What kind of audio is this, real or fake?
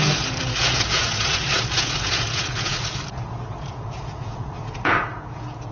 fake